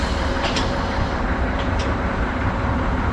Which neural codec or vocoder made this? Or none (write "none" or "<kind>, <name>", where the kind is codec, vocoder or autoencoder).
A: vocoder, BigVGAN v2